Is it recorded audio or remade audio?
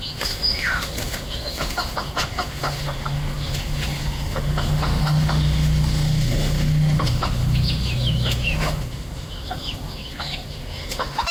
remade